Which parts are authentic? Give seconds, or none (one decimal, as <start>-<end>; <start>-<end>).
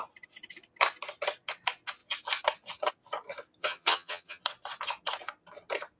0.0-3.6; 4.4-6.0